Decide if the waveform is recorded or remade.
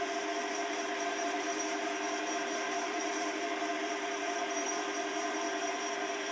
remade